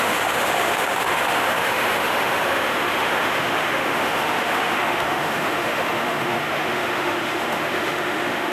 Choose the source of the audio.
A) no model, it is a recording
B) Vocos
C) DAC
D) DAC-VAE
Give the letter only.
D